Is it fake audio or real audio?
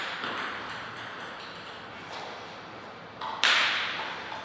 real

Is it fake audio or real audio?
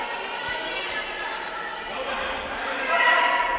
real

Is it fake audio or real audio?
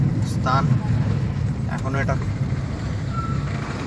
fake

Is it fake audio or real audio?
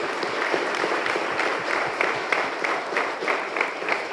fake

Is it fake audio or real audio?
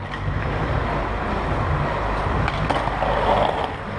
real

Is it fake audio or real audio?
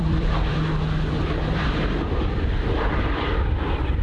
fake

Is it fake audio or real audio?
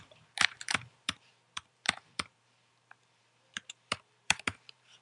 fake